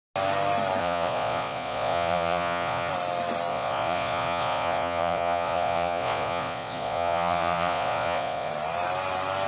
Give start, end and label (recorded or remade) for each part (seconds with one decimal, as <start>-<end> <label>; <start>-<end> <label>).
0.0-0.8 recorded; 0.8-2.9 remade; 2.9-3.5 recorded; 3.5-8.5 remade; 8.5-9.5 recorded

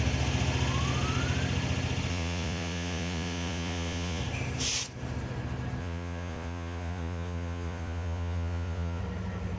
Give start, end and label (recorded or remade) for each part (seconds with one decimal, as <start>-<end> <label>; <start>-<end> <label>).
0.0-2.1 recorded; 2.1-4.2 remade; 4.2-5.8 recorded; 5.8-9.0 remade; 9.0-9.6 recorded

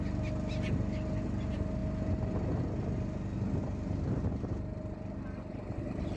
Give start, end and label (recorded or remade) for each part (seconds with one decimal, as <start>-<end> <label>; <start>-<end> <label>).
0.0-6.2 recorded

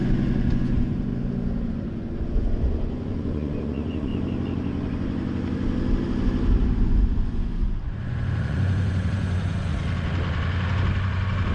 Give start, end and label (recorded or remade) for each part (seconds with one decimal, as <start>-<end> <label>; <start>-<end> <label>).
0.0-1.1 remade; 1.1-1.7 recorded; 1.7-4.1 remade; 4.1-6.7 recorded; 6.7-9.7 remade; 9.7-11.5 recorded